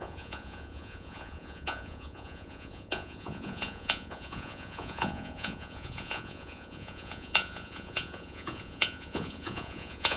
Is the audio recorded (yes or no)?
no